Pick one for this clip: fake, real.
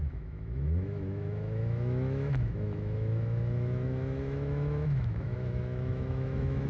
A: fake